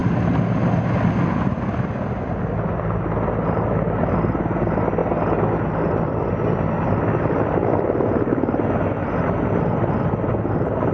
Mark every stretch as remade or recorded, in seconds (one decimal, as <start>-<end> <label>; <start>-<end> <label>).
0.0-10.9 recorded